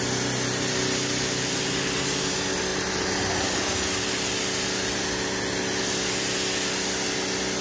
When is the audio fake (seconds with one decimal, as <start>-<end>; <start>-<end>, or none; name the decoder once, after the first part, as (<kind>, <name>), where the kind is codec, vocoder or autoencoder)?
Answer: none